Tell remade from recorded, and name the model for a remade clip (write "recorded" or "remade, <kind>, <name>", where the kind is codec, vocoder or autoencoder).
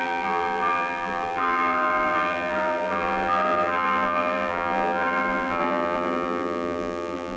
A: remade, vocoder, BigVGAN v2